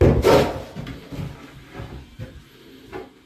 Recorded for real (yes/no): yes